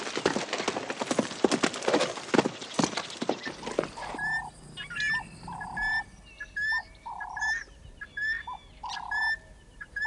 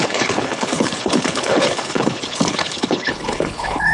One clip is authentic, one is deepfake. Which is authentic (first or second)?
first